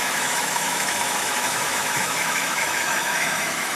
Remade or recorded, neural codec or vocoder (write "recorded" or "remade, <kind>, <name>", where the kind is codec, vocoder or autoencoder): remade, autoencoder, DAC-VAE